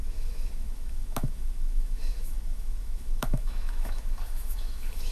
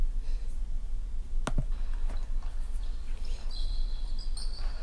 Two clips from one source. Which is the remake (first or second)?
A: first